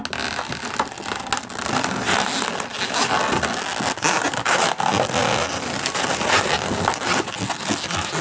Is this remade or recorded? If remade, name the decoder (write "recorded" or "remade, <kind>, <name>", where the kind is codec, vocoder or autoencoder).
recorded